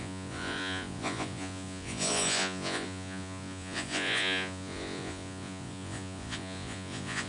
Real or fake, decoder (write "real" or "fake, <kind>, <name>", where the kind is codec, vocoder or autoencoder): fake, vocoder, Vocos